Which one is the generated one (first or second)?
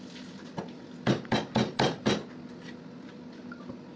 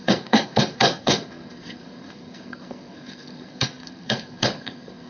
second